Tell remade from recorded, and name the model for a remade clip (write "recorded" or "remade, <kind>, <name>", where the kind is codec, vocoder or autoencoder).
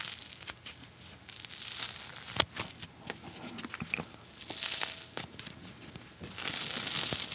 recorded